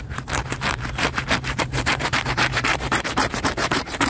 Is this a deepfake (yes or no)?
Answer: yes